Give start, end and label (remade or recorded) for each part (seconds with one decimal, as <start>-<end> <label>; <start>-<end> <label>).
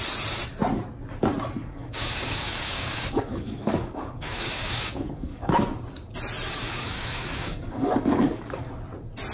0.0-1.6 recorded; 1.6-5.5 remade; 5.5-6.6 recorded; 6.6-8.7 remade; 8.7-9.3 recorded